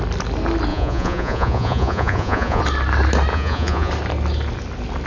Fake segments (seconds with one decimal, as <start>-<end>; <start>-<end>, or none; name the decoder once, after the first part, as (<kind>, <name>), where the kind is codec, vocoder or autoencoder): 0.7-2.6 (vocoder, Vocos); 3.3-3.9